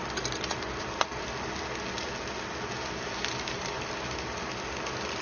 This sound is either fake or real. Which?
real